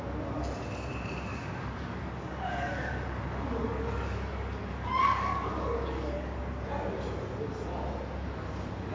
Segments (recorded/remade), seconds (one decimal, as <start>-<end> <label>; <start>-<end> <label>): 0.0-1.3 recorded; 1.3-6.4 remade; 6.4-8.9 recorded